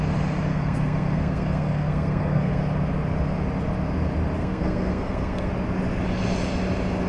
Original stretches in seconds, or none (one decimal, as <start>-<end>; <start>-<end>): 0.0-0.5; 2.6-4.4; 5.5-7.1

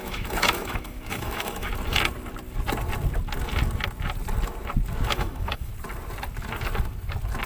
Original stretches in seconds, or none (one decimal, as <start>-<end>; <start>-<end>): 1.7-5.1; 5.7-7.5